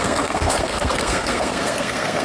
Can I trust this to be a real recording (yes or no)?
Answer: no